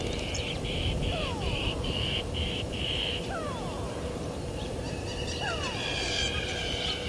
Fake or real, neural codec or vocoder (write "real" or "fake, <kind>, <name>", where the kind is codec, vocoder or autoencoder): fake, vocoder, BigVGAN v2